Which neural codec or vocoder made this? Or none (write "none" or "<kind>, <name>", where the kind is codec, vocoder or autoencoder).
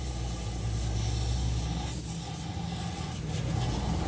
none